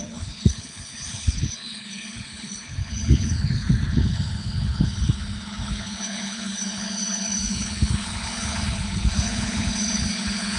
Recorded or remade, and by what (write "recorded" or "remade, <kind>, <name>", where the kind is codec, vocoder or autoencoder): remade, codec, HILCodec